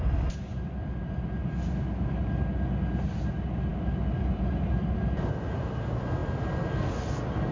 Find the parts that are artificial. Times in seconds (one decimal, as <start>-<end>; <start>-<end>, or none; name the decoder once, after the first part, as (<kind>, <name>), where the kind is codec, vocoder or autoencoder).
none